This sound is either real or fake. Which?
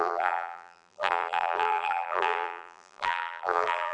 fake